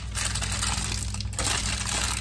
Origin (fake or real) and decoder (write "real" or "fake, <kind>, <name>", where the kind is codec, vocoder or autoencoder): real